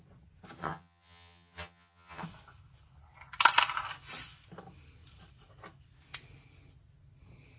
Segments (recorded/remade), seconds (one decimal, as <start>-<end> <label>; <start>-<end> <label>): 0.0-0.6 recorded; 0.6-2.2 remade; 2.2-7.6 recorded